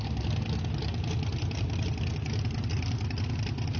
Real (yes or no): yes